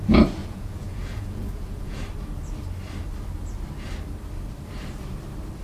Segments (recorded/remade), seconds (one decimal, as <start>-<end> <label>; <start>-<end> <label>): 0.0-0.4 recorded; 0.4-2.0 remade; 2.0-5.6 recorded